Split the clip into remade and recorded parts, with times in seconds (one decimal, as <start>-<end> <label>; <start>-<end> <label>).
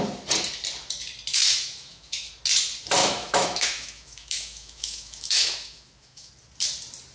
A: 0.0-1.3 recorded; 1.3-2.3 remade; 2.3-3.0 recorded; 3.0-6.3 remade; 6.3-7.1 recorded